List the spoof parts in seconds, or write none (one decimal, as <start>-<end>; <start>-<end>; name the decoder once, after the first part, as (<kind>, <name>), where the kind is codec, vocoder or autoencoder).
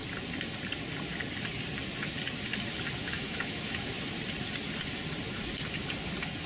3.0-3.9 (autoencoder, DAC-VAE)